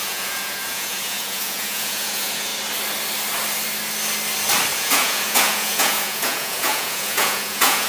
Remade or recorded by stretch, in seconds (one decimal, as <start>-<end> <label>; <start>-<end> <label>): 0.0-2.5 remade; 2.5-4.8 recorded; 4.8-7.9 remade